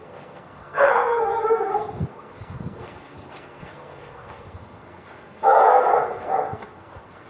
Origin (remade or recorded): remade